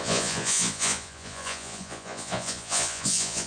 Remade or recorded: remade